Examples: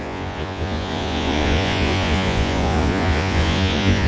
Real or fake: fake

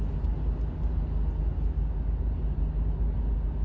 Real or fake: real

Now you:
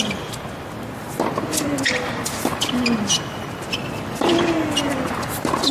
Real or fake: real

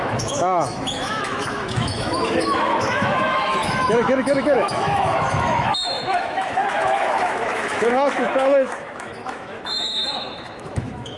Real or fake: fake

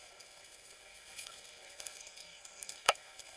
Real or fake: fake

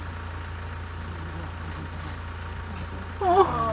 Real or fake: real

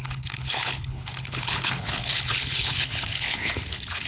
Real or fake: fake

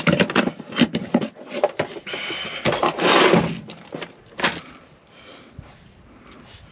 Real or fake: real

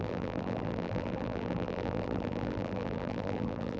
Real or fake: fake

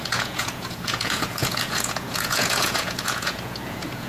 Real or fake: fake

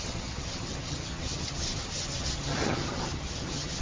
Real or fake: fake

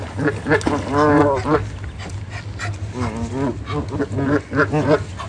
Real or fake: real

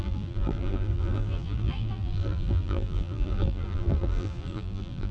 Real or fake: fake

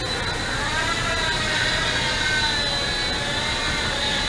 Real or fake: real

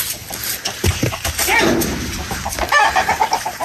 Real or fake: real